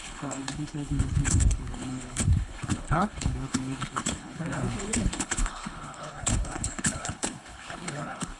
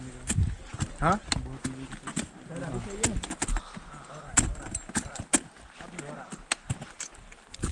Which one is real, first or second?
second